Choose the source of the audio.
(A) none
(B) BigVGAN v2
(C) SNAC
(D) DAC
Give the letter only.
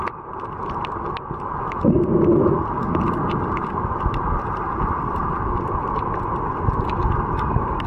A